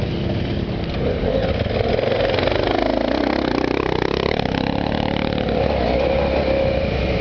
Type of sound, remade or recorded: recorded